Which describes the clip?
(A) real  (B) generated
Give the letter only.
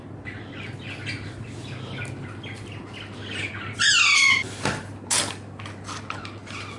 A